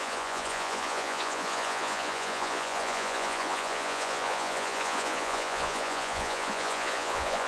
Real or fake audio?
fake